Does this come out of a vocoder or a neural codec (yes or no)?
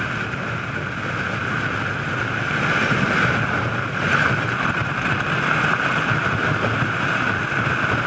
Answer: no